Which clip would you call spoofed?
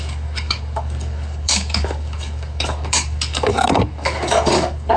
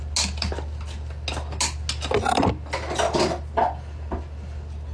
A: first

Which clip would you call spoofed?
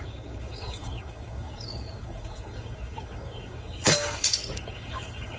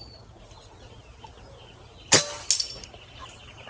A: first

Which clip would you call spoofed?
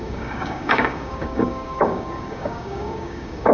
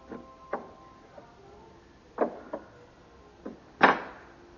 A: first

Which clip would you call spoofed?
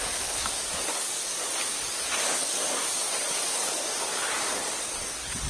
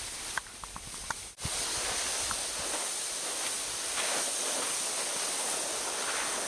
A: first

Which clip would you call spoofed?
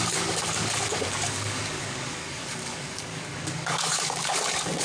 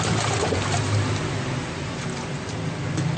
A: first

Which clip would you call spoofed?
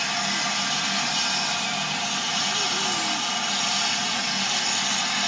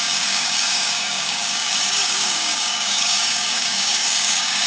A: second